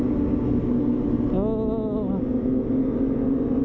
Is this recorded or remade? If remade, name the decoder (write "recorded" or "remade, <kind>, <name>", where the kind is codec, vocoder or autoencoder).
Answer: recorded